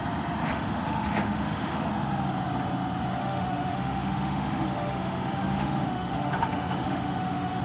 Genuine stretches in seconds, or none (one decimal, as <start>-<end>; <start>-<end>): 0.0-0.4; 1.9-3.2